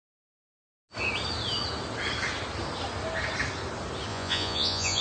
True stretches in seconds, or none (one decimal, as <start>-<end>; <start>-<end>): 0.0-4.1